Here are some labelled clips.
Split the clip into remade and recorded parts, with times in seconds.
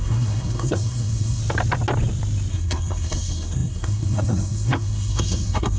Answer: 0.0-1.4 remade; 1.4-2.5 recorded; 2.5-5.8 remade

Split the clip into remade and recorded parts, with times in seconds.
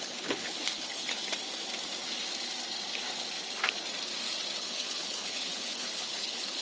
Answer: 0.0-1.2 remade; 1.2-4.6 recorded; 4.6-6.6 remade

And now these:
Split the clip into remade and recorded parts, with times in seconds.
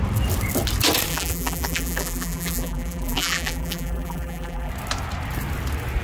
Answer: 0.0-1.1 recorded; 1.1-4.7 remade; 4.7-6.0 recorded